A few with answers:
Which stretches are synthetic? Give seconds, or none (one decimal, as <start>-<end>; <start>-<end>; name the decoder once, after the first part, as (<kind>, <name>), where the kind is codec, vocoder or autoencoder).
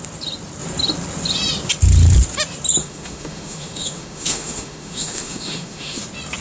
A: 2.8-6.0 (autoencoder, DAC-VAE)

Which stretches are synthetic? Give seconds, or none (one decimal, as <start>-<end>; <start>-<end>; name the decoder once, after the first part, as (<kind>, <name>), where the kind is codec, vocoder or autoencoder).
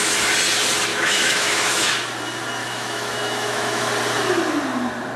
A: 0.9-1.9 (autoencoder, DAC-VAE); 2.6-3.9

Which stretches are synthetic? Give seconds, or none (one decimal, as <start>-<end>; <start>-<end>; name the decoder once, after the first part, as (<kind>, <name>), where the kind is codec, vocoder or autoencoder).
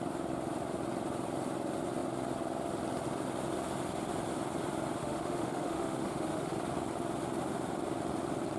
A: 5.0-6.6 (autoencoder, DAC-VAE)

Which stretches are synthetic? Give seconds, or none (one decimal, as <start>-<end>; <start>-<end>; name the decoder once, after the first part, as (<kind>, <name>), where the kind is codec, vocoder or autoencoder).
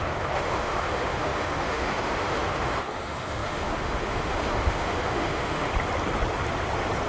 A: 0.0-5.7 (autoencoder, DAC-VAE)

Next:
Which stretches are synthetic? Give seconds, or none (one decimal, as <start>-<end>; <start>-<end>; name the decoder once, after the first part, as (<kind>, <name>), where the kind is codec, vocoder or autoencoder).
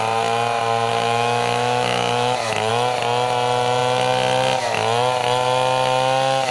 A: 0.9-2.7 (autoencoder, DAC-VAE)